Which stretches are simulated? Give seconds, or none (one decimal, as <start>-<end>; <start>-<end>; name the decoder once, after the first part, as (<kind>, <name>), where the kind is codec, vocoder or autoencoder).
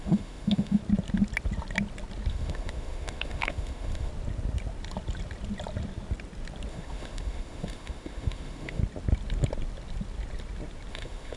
0.0-0.8 (autoencoder, DAC-VAE); 2.3-4.1; 6.7-8.8; 10.9-11.4